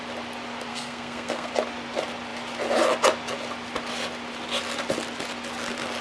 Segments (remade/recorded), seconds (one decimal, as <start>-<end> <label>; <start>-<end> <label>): 0.0-0.7 recorded; 0.7-1.5 remade; 1.5-6.0 recorded

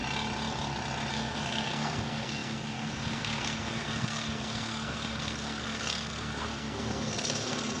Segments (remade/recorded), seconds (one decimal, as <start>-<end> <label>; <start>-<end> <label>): 0.0-1.1 recorded; 1.1-7.8 remade

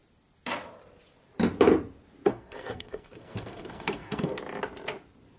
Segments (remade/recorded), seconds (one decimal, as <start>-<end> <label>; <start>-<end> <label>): 0.0-2.3 recorded; 2.3-4.4 remade; 4.4-5.4 recorded

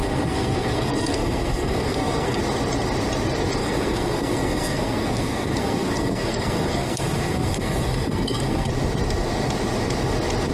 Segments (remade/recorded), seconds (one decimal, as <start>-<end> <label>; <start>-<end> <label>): 0.0-2.4 remade; 2.4-3.6 recorded; 3.6-8.7 remade; 8.7-10.5 recorded

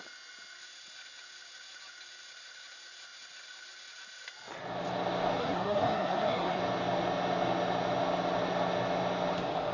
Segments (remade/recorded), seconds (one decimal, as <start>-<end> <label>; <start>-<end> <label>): 0.0-5.4 recorded; 5.4-6.6 remade; 6.6-9.7 recorded

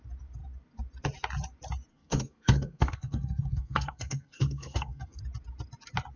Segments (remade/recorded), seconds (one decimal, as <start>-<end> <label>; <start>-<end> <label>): 0.0-1.9 recorded; 1.9-5.2 remade; 5.2-6.2 recorded

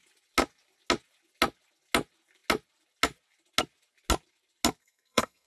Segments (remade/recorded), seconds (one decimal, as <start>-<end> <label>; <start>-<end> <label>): 0.0-4.8 recorded; 4.8-5.5 remade